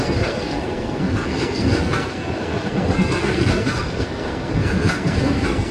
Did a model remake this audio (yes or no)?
yes